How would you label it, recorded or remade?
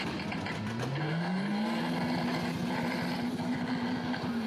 recorded